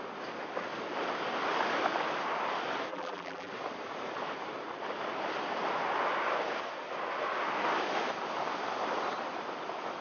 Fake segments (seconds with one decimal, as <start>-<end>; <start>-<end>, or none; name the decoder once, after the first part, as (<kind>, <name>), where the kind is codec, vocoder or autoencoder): 2.9-3.5 (vocoder, BigVGAN v2)

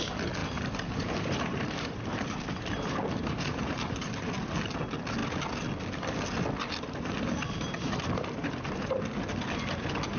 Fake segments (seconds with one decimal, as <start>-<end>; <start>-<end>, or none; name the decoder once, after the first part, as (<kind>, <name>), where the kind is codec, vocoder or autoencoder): 0.4-4.1 (vocoder, BigVGAN v2); 8.4-9.0

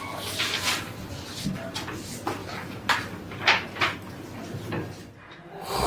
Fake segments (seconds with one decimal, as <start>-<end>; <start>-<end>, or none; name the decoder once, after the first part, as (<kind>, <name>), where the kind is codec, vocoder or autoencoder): 2.4-3.0 (vocoder, BigVGAN v2)

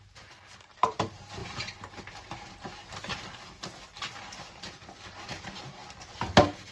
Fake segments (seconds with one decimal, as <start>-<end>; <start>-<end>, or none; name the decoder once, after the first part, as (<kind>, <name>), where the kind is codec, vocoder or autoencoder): 0.0-1.4 (vocoder, BigVGAN v2); 5.3-5.8

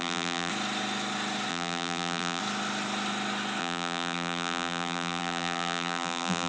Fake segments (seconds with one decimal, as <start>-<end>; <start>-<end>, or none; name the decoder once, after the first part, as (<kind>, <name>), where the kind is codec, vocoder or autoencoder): 0.0-0.5 (vocoder, BigVGAN v2); 1.5-2.4; 3.6-6.5